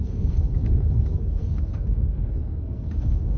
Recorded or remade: remade